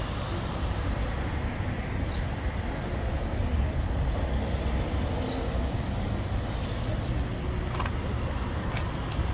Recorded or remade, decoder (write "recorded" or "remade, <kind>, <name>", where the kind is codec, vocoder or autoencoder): recorded